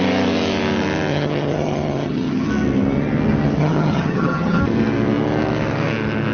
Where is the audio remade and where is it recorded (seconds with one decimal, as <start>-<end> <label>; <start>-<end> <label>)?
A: 0.0-1.1 recorded; 1.1-2.5 remade; 2.5-3.6 recorded; 3.6-4.6 remade; 4.6-6.3 recorded

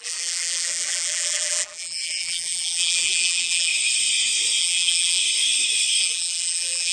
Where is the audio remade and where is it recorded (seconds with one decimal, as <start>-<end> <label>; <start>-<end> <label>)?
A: 0.0-3.7 remade; 3.7-4.6 recorded; 4.6-5.2 remade; 5.2-6.0 recorded; 6.0-6.9 remade

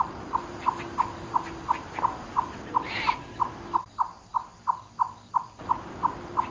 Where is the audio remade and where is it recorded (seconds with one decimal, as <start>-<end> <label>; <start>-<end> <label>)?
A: 0.0-6.5 recorded

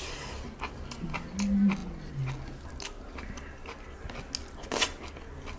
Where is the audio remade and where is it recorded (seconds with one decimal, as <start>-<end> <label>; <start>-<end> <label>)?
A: 0.0-5.6 recorded

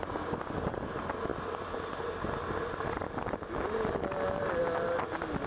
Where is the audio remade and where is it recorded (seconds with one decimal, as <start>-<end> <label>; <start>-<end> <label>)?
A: 0.0-5.5 recorded

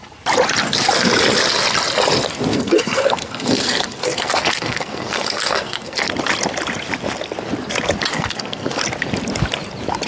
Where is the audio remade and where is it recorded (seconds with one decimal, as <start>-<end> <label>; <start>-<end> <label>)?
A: 0.0-2.5 recorded; 2.5-6.1 remade; 6.1-8.1 recorded; 8.1-8.8 remade; 8.8-10.1 recorded